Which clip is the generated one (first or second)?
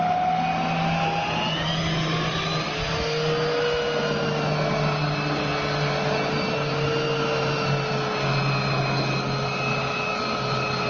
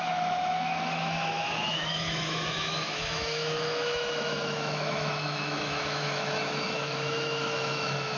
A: second